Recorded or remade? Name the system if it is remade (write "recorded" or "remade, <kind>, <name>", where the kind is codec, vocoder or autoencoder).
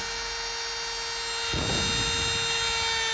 recorded